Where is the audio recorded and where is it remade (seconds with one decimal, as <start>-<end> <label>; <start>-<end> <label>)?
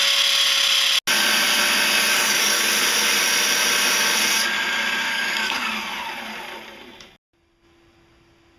0.0-2.1 recorded; 2.1-2.7 remade; 2.7-5.1 recorded; 5.1-5.7 remade; 5.7-8.6 recorded